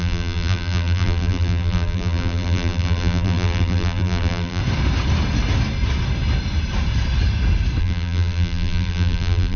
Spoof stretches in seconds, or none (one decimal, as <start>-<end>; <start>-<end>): 0.0-4.6; 7.8-9.6